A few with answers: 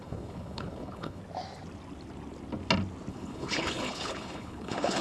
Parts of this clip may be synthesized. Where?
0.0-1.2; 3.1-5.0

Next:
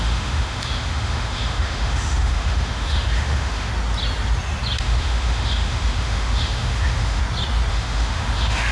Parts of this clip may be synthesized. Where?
0.0-3.7; 4.8-7.2; 7.7-8.7

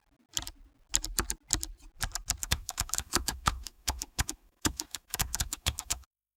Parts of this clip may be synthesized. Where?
2.4-6.4